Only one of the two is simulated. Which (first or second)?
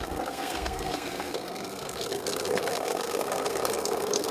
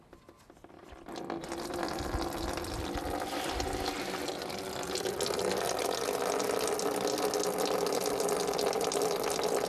first